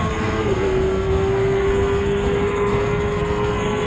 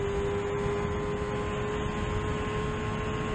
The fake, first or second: first